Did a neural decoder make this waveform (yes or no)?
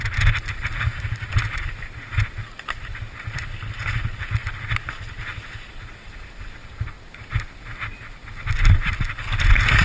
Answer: no